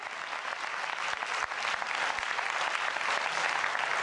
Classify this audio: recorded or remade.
recorded